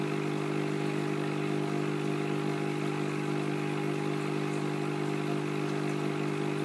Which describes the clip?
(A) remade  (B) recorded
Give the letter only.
B